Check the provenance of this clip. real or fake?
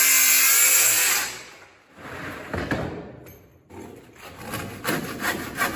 real